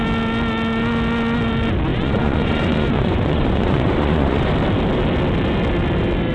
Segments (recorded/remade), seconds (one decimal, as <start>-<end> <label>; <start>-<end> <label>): 0.0-1.9 recorded; 1.9-4.5 remade; 4.5-6.3 recorded